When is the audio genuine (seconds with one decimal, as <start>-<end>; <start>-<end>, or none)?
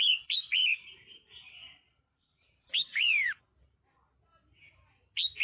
0.0-0.6; 3.4-5.4